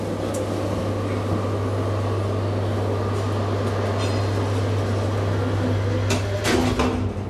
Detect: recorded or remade recorded